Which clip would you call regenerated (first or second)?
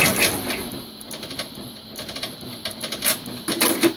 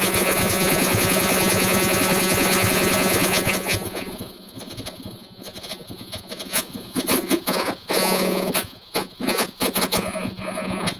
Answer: second